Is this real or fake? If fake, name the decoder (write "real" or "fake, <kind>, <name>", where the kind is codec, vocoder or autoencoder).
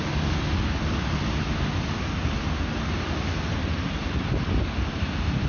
real